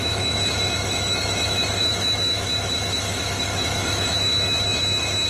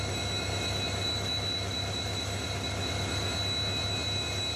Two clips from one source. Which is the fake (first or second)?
first